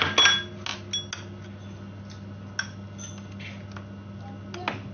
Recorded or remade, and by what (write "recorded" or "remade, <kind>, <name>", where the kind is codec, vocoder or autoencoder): recorded